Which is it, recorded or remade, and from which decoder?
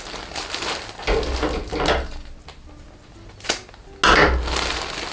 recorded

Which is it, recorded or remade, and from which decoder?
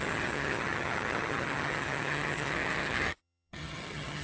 remade, vocoder, HiFi-GAN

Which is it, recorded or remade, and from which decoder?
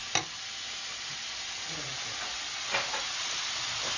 recorded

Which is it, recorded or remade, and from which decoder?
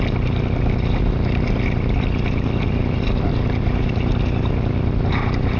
recorded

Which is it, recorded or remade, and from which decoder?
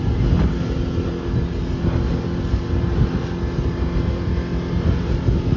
recorded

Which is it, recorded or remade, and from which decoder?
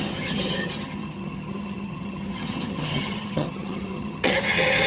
remade, vocoder, HiFi-GAN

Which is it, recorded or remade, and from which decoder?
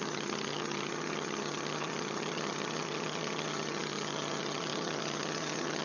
remade, vocoder, HiFi-GAN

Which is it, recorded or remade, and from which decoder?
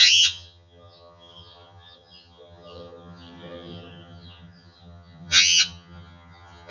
remade, vocoder, HiFi-GAN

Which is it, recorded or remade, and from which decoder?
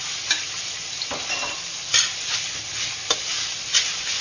recorded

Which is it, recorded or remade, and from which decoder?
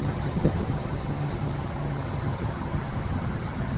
remade, vocoder, HiFi-GAN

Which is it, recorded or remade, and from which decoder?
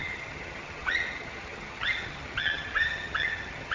remade, vocoder, HiFi-GAN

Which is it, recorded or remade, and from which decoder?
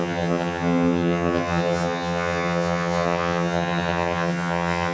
remade, vocoder, HiFi-GAN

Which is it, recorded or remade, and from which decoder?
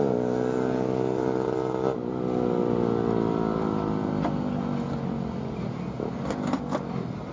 recorded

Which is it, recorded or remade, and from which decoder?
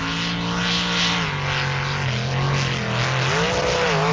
recorded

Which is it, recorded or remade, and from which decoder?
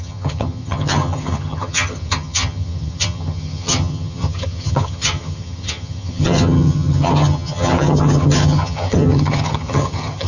remade, vocoder, HiFi-GAN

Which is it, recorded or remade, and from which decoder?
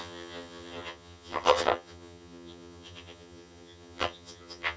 remade, vocoder, HiFi-GAN